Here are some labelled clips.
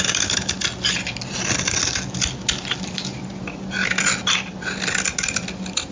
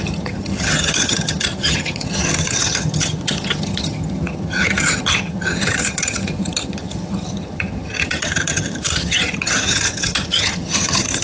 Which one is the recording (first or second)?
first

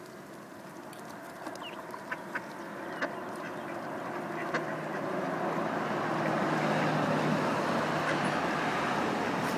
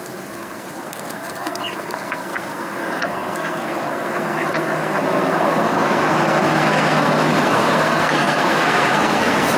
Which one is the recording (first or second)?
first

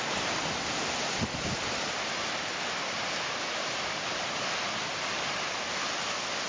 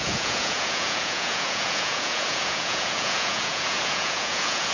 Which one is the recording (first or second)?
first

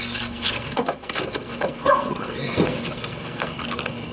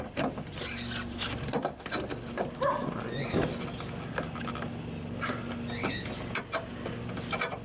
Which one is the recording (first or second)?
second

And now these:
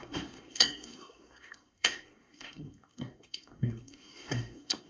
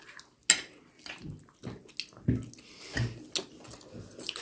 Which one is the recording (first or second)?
second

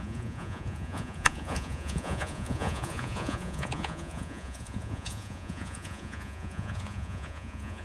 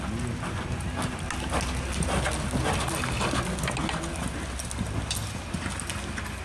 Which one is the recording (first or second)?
second